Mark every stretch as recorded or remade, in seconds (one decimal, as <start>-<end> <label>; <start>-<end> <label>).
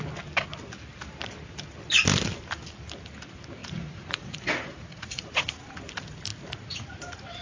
0.0-3.6 recorded; 3.6-5.8 remade; 5.8-7.4 recorded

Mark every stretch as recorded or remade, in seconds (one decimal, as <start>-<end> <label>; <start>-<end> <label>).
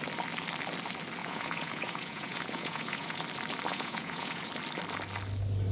0.0-1.2 recorded; 1.2-3.2 remade; 3.2-3.7 recorded; 3.7-4.5 remade; 4.5-5.7 recorded